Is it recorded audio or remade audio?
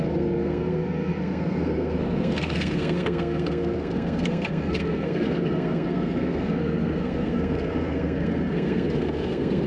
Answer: remade